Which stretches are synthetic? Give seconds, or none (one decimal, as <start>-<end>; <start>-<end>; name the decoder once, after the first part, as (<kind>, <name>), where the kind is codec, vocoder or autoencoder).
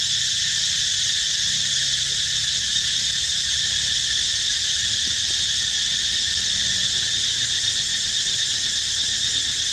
2.7-5.4 (vocoder, BigVGAN v2); 7.9-8.9